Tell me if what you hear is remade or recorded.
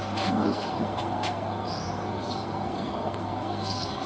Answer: remade